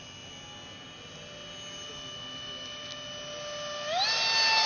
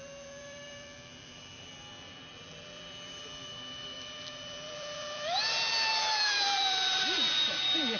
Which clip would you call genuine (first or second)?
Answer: first